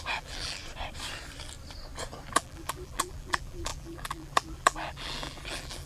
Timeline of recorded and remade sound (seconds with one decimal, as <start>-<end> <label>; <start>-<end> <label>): 0.0-0.6 remade; 0.6-2.3 recorded; 2.3-5.9 remade